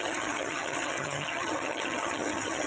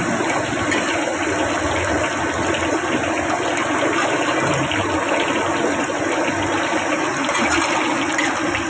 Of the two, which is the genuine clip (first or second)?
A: second